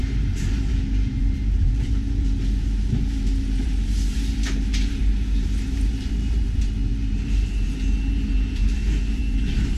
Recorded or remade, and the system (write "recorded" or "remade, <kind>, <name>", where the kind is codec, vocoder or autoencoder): remade, vocoder, BigVGAN v2